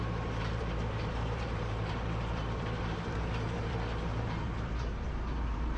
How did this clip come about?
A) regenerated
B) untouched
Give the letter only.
A